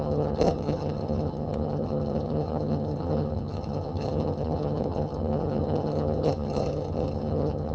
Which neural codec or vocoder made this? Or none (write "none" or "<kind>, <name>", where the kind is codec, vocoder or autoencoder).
vocoder, HiFi-GAN